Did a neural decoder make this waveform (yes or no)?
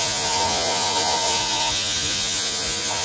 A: yes